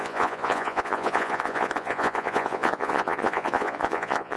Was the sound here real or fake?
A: fake